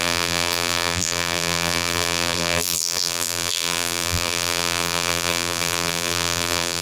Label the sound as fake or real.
fake